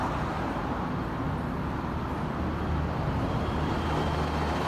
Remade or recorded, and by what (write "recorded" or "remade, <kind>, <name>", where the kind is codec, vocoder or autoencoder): recorded